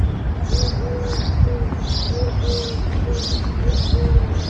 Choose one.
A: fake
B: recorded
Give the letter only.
B